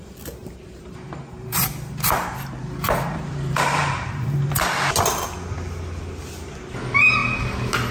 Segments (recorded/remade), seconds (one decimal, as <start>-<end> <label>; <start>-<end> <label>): 0.0-0.4 recorded; 0.4-4.5 remade; 4.5-7.9 recorded